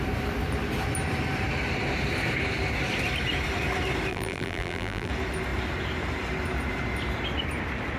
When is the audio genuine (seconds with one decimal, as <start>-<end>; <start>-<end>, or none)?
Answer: 0.0-4.1; 5.1-8.0